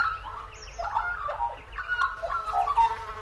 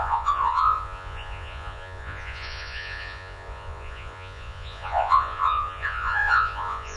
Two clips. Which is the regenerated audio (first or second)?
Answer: second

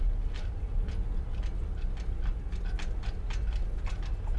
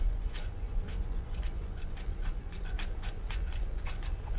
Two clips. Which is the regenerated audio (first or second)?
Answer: second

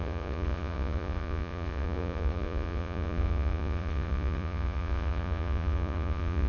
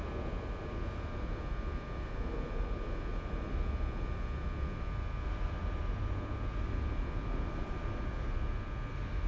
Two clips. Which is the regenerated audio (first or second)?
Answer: first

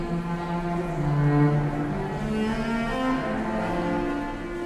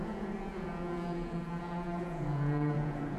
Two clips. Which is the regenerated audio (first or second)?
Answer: second